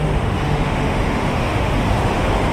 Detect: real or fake fake